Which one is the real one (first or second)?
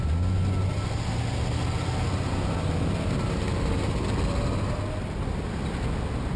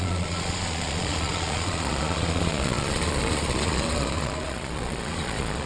first